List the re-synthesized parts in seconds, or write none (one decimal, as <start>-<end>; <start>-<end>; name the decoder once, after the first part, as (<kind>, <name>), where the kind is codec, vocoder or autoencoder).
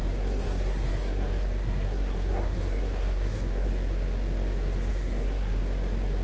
0.0-3.7 (codec, SNAC); 4.9-5.6